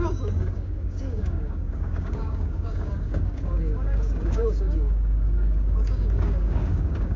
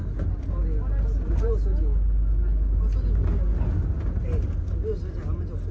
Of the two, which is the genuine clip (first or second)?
second